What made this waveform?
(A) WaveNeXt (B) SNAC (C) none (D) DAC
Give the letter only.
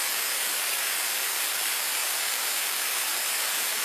D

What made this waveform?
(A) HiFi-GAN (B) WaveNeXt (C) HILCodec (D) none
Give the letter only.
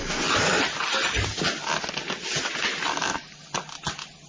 D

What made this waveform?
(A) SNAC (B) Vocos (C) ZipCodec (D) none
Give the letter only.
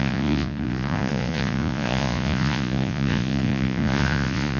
B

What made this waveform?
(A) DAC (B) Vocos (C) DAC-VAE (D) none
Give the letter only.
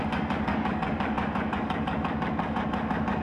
A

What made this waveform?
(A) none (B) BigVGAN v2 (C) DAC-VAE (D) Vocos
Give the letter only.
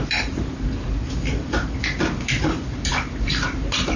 B